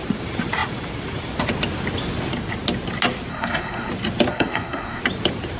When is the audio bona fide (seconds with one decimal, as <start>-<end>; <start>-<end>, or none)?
0.0-3.3; 3.9-4.3; 5.0-5.6